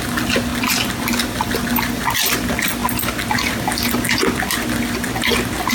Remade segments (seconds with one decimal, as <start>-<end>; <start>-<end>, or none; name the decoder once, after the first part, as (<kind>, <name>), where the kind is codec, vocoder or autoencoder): none